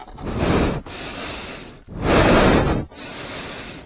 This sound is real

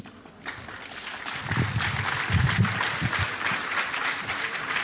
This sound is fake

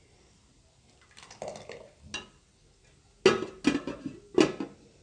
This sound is real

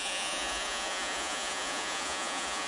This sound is fake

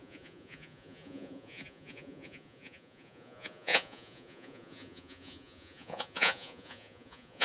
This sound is fake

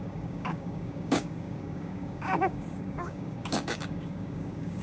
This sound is fake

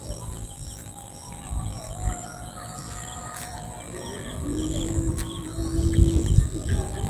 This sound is fake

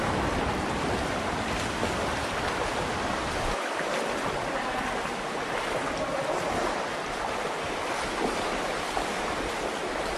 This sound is real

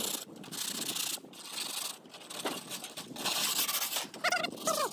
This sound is real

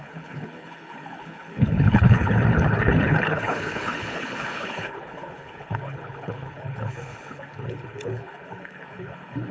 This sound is fake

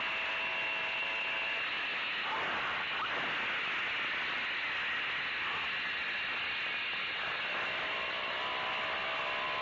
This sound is real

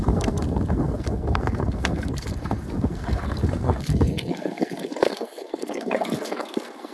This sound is fake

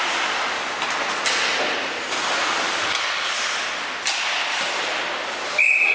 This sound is real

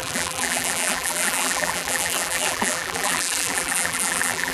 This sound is fake